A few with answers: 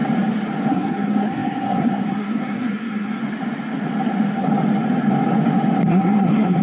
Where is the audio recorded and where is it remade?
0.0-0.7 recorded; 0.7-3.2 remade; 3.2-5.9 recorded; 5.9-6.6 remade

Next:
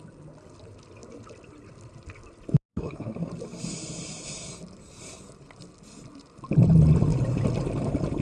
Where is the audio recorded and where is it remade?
0.0-2.7 recorded; 2.7-3.3 remade; 3.3-8.2 recorded